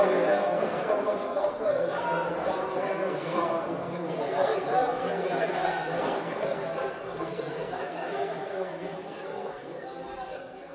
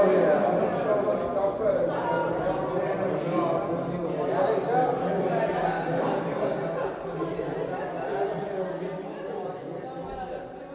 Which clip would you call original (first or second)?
second